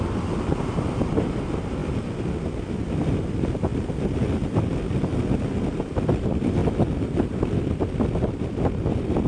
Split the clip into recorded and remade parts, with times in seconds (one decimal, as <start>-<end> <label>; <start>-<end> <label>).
0.0-9.3 recorded